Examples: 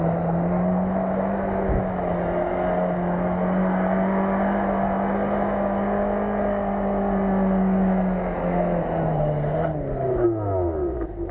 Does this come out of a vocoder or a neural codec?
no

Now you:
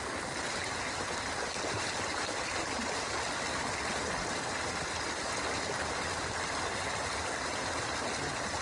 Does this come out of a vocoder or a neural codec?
no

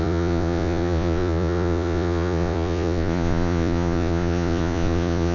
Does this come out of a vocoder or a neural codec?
yes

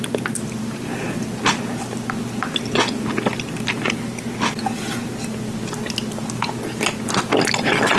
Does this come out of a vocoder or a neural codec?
no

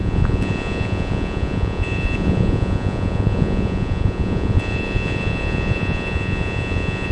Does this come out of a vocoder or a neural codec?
yes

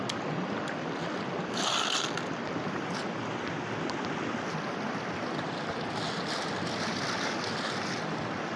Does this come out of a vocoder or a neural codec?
no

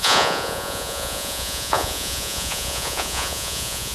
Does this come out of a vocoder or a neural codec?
yes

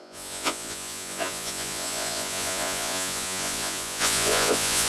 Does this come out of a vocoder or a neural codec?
yes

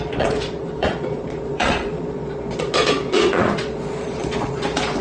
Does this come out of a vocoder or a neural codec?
yes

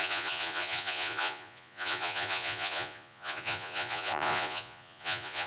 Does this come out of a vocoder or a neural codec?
yes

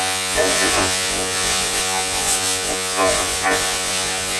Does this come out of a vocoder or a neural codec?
yes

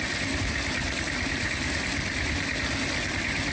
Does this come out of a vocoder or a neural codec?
no